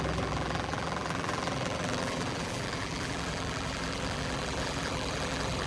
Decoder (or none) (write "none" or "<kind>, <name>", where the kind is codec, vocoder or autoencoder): vocoder, BigVGAN v2